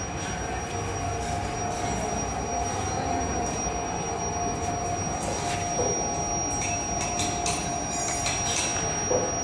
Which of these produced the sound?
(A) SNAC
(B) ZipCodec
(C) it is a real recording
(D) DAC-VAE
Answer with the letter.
C